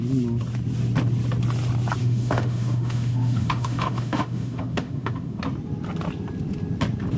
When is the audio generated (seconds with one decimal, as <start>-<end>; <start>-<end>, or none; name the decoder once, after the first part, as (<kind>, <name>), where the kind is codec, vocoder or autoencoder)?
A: 2.0-5.4 (autoencoder, DAC-VAE)